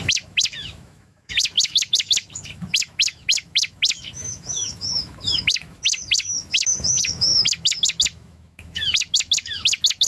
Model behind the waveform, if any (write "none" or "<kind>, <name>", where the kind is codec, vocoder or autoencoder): autoencoder, DAC-VAE